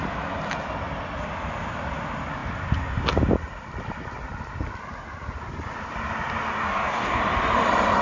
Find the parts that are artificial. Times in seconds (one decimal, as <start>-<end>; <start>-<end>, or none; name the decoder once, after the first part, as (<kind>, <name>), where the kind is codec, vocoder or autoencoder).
6.6-7.2 (codec, DAC)